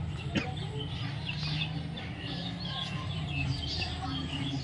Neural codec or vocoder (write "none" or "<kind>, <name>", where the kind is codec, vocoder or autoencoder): none